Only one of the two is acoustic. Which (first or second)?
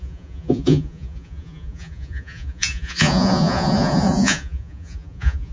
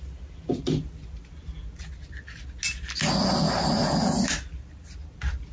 second